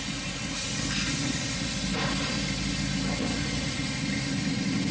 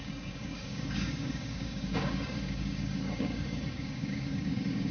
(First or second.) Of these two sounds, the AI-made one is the second